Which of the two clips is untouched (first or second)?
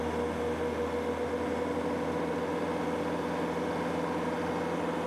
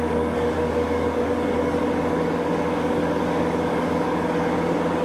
first